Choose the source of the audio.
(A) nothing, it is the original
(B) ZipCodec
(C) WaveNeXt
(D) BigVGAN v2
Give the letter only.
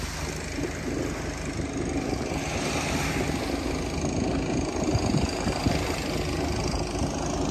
A